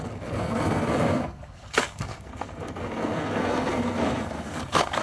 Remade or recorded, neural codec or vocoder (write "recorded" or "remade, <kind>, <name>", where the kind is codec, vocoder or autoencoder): remade, codec, SNAC